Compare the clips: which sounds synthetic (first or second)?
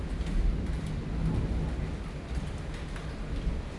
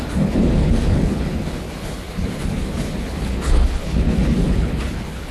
second